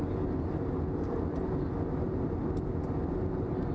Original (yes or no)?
yes